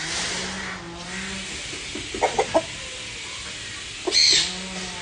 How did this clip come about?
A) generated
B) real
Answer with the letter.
B